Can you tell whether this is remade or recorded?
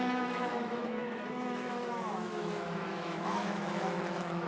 remade